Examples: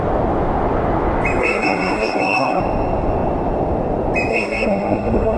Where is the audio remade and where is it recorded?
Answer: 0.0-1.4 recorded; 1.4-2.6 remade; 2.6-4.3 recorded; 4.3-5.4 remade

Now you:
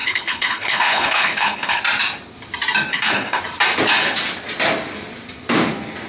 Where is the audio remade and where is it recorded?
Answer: 0.0-1.8 remade; 1.8-2.9 recorded; 2.9-3.4 remade; 3.4-6.1 recorded

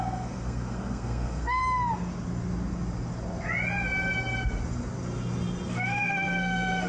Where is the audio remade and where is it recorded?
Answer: 0.0-1.6 remade; 1.6-5.7 recorded; 5.7-6.9 remade

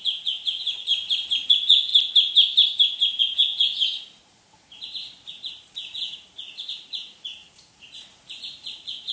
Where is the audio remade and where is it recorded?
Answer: 0.0-0.9 remade; 0.9-1.5 recorded; 1.5-1.9 remade; 1.9-3.2 recorded; 3.2-9.1 remade

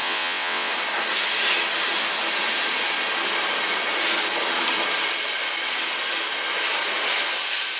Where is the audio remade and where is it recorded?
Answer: 0.0-0.7 remade; 0.7-7.8 recorded